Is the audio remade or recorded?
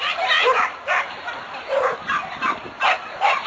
recorded